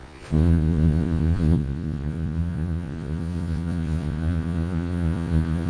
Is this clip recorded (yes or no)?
no